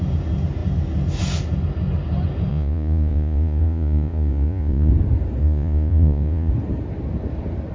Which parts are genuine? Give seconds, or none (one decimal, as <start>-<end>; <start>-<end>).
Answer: 0.0-2.5; 4.9-5.4; 6.5-7.7